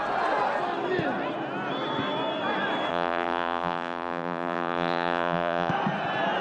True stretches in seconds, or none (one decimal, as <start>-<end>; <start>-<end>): 0.0-2.9; 5.7-6.4